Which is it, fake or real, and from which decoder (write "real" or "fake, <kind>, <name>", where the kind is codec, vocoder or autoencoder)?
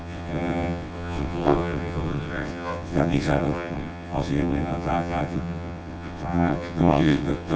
fake, vocoder, WaveNeXt